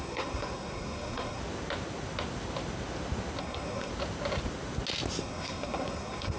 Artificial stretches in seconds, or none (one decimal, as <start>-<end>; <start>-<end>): 0.0-1.4; 3.4-3.9; 5.2-6.4